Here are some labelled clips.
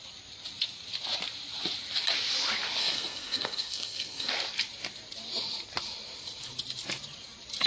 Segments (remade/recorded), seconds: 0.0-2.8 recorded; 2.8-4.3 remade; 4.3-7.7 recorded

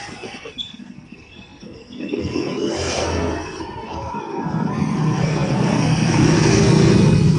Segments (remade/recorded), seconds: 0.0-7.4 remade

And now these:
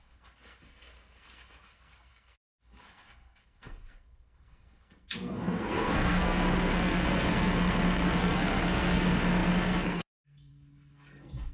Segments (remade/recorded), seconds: 0.0-11.5 remade

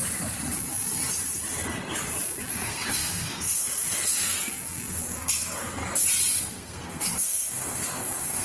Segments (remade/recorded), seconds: 0.0-2.5 recorded; 2.5-5.8 remade; 5.8-6.3 recorded; 6.3-8.4 remade